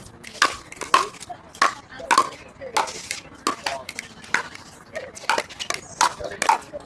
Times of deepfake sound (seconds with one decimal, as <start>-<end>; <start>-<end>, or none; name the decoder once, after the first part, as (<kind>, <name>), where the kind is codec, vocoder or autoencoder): none